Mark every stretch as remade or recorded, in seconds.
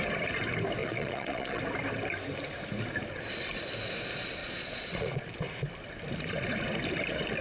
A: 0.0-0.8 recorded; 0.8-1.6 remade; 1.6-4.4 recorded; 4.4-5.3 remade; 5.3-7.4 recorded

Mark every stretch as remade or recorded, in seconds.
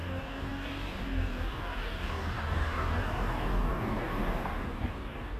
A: 0.0-5.4 remade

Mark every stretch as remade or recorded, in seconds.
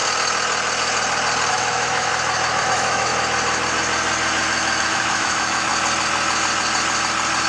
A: 0.0-1.5 recorded; 1.5-2.1 remade; 2.1-2.6 recorded; 2.6-3.1 remade; 3.1-4.8 recorded; 4.8-5.7 remade; 5.7-7.5 recorded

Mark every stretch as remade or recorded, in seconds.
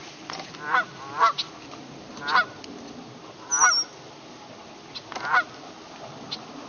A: 0.0-6.7 recorded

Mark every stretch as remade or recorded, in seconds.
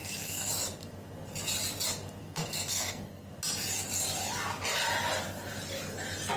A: 0.0-0.5 remade; 0.5-2.2 recorded; 2.2-3.3 remade; 3.3-6.4 recorded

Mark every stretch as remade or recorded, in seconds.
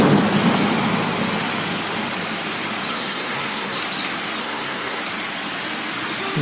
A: 0.0-2.9 recorded; 2.9-3.8 remade; 3.8-4.4 recorded; 4.4-5.0 remade; 5.0-6.4 recorded